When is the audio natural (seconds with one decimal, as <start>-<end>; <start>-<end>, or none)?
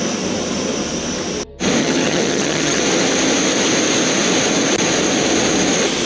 0.0-1.8; 2.8-6.1